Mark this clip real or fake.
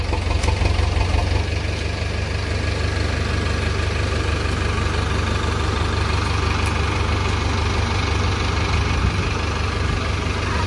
real